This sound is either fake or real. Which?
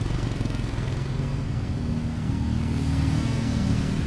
fake